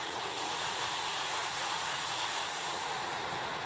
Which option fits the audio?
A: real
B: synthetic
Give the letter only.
B